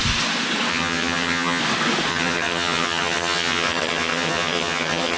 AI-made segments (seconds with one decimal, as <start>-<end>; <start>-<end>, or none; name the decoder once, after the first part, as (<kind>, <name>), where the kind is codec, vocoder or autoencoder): 0.7-1.6 (vocoder, HiFi-GAN); 2.1-5.2